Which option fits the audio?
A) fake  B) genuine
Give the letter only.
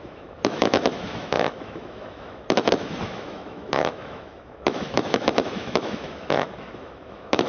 A